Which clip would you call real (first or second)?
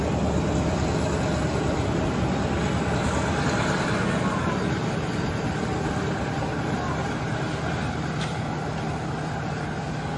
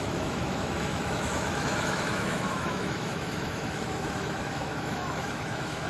first